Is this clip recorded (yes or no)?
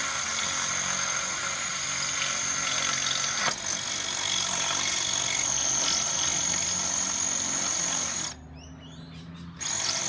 yes